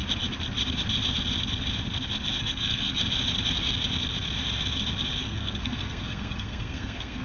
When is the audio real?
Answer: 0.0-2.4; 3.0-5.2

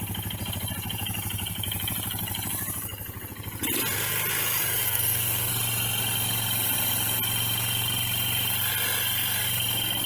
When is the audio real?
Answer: 0.0-4.8; 5.5-10.1

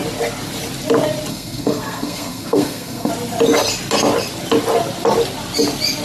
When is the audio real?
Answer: 0.0-1.3; 3.1-6.0

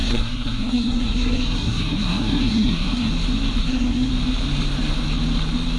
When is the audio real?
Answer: 3.1-3.6; 4.1-5.8